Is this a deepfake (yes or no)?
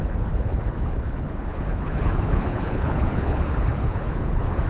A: yes